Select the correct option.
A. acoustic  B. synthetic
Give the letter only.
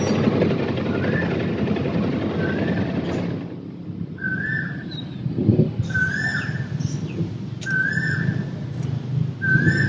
A